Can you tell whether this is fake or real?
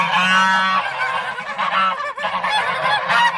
real